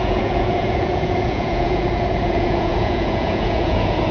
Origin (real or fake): fake